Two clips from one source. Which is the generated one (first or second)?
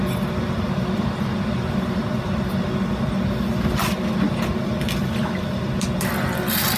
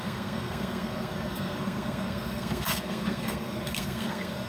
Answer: second